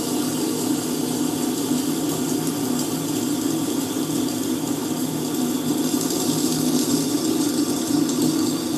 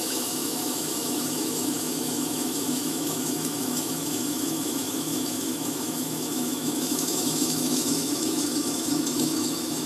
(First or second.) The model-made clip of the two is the second